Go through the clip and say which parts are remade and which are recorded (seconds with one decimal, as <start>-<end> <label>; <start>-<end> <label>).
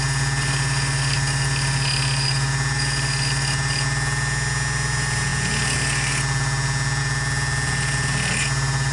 0.0-8.9 recorded